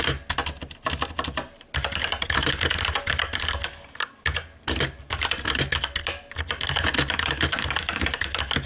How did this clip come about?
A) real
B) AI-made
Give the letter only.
A